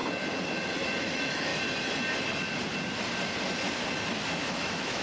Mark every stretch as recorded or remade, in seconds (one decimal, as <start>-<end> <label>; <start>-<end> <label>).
0.0-1.0 recorded; 1.0-1.5 remade; 1.5-4.5 recorded; 4.5-5.0 remade